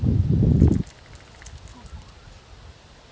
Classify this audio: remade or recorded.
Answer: recorded